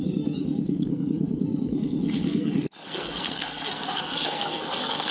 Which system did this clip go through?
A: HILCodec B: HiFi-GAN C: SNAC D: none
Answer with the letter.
C